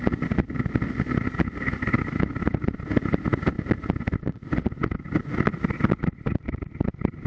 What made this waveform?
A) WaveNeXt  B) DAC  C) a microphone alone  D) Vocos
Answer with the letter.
C